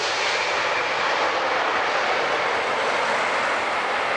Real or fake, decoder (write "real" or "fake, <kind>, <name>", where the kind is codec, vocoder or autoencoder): real